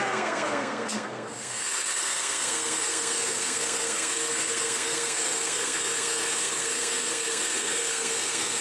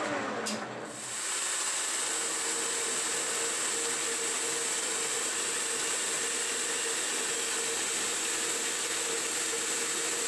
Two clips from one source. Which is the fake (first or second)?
first